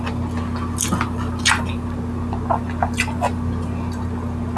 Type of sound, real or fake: real